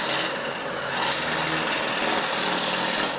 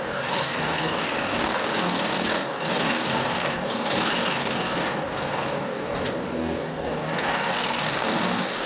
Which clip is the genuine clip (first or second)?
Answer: first